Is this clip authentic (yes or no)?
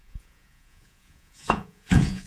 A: no